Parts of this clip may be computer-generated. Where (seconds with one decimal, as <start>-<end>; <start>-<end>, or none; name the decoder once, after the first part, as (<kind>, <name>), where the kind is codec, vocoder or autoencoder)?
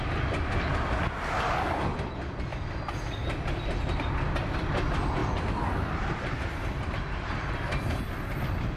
none